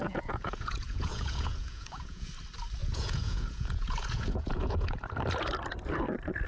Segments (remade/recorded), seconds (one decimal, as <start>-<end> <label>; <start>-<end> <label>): 0.0-2.3 remade; 2.3-2.8 recorded; 2.8-5.0 remade; 5.0-6.5 recorded